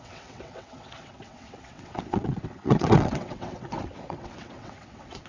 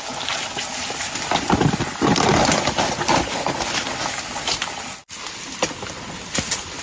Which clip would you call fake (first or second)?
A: first